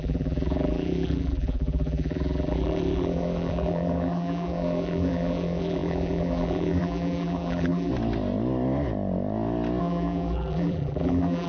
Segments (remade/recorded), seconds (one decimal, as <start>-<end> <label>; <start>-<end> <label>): 0.0-7.9 remade; 7.9-9.8 recorded; 9.8-11.5 remade